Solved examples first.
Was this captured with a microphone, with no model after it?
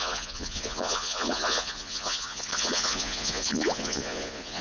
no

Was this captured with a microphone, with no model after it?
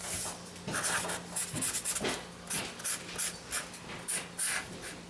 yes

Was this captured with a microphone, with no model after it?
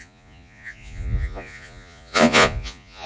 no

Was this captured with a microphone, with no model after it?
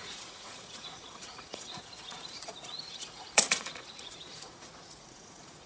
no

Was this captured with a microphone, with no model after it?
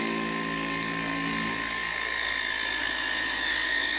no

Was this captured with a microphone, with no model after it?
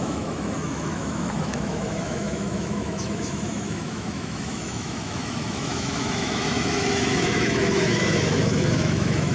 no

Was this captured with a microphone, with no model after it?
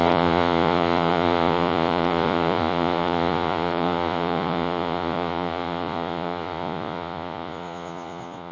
no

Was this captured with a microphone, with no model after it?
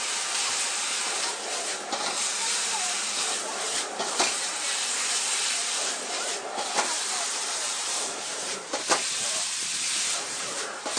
no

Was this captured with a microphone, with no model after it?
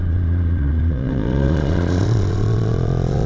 no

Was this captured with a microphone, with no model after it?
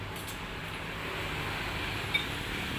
yes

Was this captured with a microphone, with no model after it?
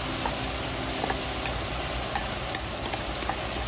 yes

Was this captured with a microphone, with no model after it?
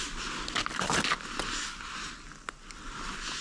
yes